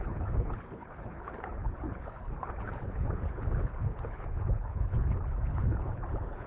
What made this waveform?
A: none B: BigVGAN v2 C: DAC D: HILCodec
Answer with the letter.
D